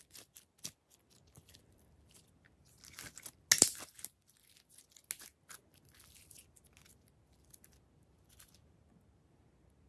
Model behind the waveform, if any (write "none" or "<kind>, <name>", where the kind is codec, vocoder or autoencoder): none